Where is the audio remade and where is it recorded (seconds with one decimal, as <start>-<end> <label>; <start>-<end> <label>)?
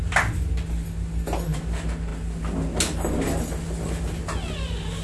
0.0-5.0 recorded